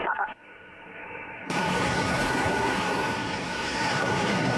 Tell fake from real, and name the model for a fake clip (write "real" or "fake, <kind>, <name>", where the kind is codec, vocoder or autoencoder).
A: fake, codec, SNAC